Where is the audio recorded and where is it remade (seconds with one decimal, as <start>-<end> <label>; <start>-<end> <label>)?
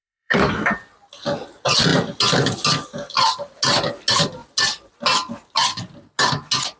0.0-0.7 remade; 0.7-6.8 recorded